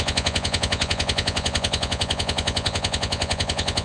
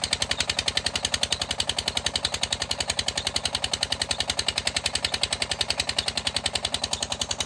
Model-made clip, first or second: first